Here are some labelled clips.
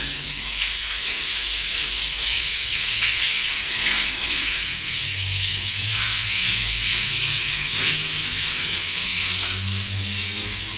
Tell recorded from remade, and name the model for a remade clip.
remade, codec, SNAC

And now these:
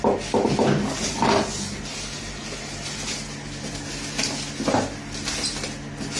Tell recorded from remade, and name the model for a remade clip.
recorded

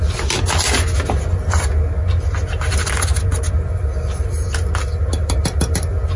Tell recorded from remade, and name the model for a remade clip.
recorded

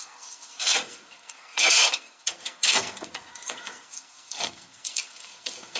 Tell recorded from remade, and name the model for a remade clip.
remade, codec, SNAC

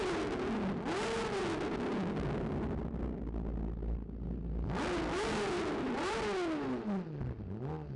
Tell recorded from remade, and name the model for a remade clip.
recorded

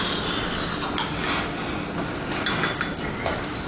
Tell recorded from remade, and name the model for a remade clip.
recorded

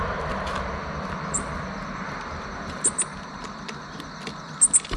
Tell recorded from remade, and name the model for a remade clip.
recorded